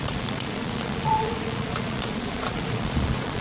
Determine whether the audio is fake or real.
fake